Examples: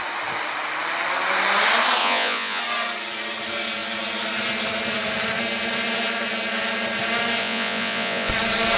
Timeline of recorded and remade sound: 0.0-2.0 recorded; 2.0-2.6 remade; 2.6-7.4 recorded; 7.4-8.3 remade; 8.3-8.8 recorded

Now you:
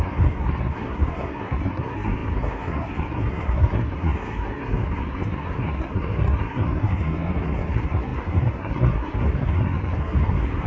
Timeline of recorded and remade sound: 0.0-10.7 remade

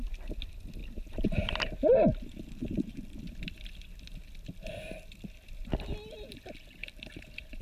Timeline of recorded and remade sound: 0.0-0.8 recorded; 0.8-1.5 remade; 1.5-2.6 recorded; 2.6-3.2 remade; 3.2-6.8 recorded; 6.8-7.6 remade

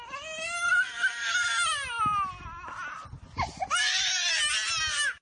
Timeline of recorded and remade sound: 0.0-5.2 recorded